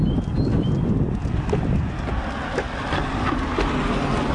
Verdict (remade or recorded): recorded